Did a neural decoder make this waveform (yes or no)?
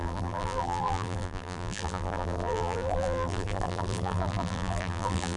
yes